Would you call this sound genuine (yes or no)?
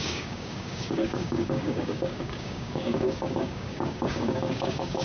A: no